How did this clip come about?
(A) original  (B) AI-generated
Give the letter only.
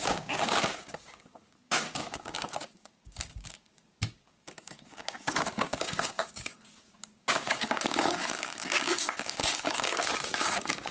B